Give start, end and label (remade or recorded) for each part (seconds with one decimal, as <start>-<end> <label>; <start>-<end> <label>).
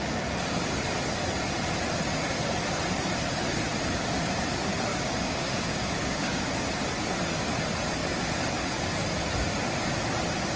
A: 0.0-4.9 recorded; 4.9-6.4 remade; 6.4-10.6 recorded